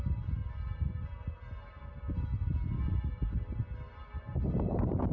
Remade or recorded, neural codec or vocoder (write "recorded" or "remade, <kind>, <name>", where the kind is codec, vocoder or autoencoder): recorded